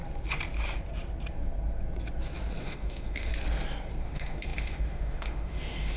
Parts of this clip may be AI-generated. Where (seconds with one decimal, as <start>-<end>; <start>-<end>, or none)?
2.6-3.3; 4.0-6.0